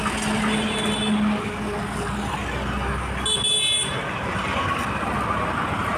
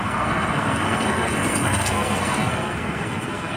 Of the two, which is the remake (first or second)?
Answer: second